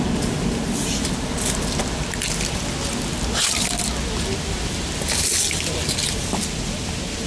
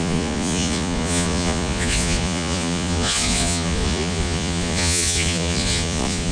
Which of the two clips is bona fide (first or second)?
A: first